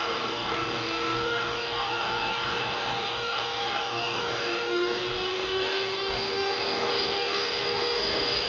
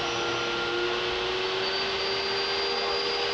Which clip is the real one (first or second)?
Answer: second